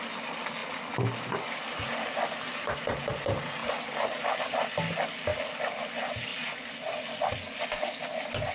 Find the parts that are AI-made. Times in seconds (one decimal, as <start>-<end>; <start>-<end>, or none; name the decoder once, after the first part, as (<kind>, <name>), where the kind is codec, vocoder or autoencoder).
3.6-4.2 (vocoder, BigVGAN v2)